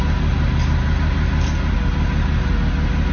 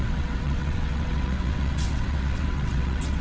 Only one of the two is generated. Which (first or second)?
second